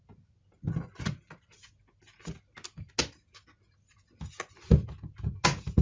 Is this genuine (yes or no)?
yes